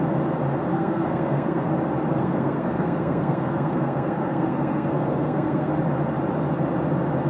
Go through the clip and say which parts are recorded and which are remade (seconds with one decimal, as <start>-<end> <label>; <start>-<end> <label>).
0.0-0.7 recorded; 0.7-1.7 remade; 1.7-2.2 recorded; 2.2-5.7 remade; 5.7-7.3 recorded